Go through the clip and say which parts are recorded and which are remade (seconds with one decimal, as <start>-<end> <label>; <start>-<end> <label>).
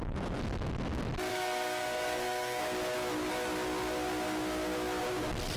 0.0-1.3 recorded; 1.3-2.6 remade; 2.6-5.6 recorded